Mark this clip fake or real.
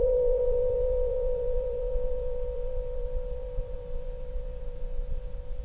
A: fake